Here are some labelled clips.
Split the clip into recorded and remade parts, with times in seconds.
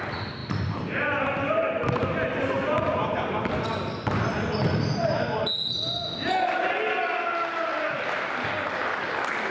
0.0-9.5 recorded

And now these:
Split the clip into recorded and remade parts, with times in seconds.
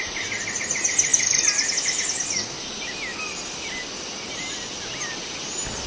0.0-5.9 recorded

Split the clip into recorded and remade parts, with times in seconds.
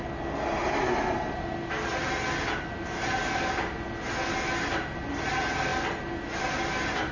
0.0-7.1 recorded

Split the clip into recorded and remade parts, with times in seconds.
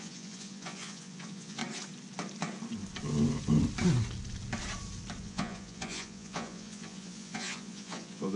0.0-1.6 remade; 1.6-5.2 recorded; 5.2-8.4 remade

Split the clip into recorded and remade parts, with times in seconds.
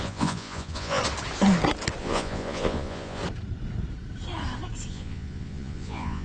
0.0-1.0 remade; 1.0-2.0 recorded; 2.0-3.2 remade; 3.2-4.9 recorded; 4.9-6.2 remade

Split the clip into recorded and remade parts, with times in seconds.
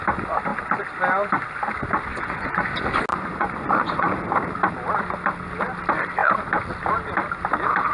0.0-2.1 recorded; 2.1-2.7 remade; 2.7-3.1 recorded; 3.1-4.2 remade; 4.2-7.9 recorded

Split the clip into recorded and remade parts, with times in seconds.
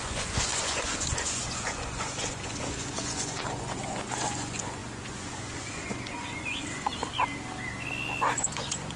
0.0-6.9 remade; 6.9-8.3 recorded; 8.3-9.0 remade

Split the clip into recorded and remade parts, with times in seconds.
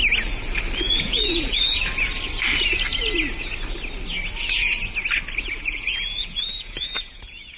0.0-0.8 recorded; 0.8-1.9 remade; 1.9-5.5 recorded; 5.5-7.6 remade